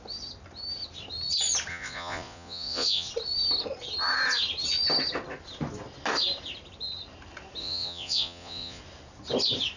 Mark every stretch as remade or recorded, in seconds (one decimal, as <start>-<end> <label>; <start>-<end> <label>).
0.0-1.7 recorded; 1.7-3.1 remade; 3.1-7.6 recorded; 7.6-8.8 remade; 8.8-9.8 recorded